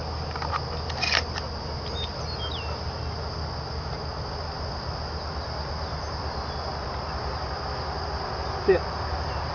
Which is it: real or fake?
real